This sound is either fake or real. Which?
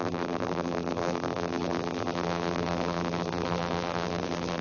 fake